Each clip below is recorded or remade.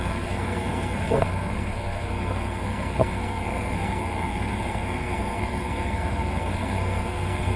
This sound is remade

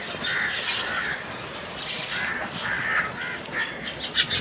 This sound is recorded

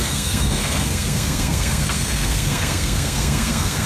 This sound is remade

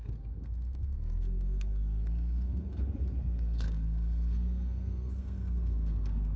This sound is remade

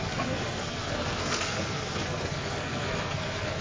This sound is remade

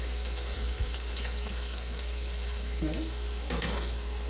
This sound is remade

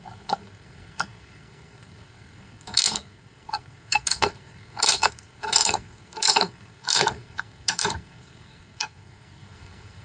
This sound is remade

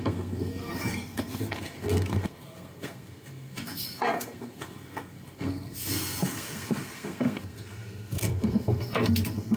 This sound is remade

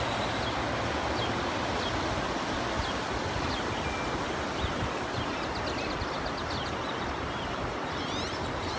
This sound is recorded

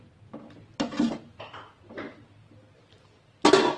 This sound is recorded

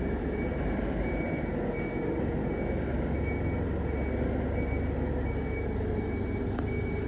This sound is recorded